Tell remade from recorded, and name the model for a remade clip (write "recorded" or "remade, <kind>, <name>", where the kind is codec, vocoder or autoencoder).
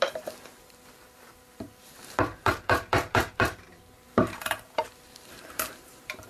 remade, vocoder, BigVGAN v2